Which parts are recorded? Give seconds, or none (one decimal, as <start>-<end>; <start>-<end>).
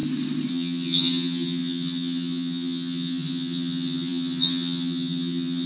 0.0-0.5